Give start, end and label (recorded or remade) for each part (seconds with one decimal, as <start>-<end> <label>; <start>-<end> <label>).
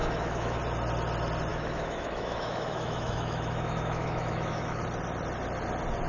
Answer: 0.0-0.6 remade; 0.6-1.5 recorded; 1.5-4.8 remade; 4.8-6.1 recorded